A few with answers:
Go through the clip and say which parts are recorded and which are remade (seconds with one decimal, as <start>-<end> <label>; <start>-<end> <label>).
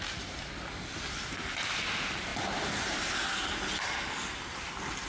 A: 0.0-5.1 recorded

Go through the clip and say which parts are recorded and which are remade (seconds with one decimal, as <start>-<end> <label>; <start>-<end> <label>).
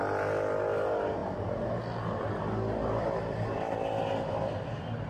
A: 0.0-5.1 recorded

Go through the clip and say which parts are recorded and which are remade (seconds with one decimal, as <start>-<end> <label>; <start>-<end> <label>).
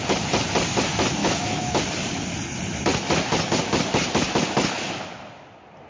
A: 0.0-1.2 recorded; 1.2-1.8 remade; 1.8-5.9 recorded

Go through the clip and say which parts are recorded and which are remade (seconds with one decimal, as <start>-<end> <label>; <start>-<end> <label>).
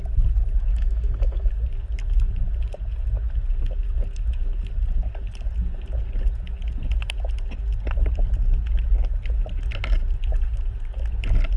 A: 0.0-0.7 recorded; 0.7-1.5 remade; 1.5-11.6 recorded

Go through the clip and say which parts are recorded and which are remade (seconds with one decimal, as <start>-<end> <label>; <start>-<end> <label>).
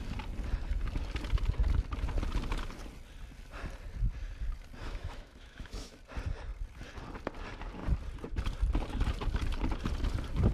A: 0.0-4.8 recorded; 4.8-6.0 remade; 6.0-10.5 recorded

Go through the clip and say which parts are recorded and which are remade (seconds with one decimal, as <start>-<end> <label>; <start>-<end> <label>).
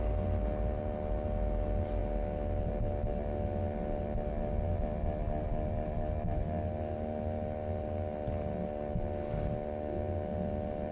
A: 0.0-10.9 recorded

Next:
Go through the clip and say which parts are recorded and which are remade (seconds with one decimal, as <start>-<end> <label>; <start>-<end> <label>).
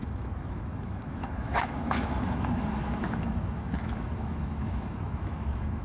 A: 0.0-5.8 remade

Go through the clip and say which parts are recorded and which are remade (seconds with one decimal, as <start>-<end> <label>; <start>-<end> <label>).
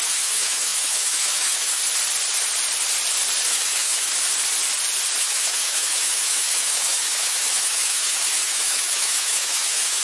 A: 0.0-1.8 remade; 1.8-3.5 recorded; 3.5-4.1 remade; 4.1-5.2 recorded; 5.2-10.0 remade